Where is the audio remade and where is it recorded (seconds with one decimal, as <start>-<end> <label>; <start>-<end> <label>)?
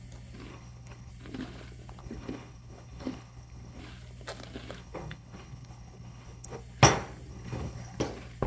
0.0-0.5 recorded; 0.5-1.1 remade; 1.1-2.0 recorded; 2.0-3.8 remade; 3.8-4.8 recorded; 4.8-6.6 remade; 6.6-7.3 recorded; 7.3-8.0 remade; 8.0-8.5 recorded